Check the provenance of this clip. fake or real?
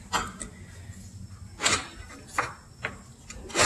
real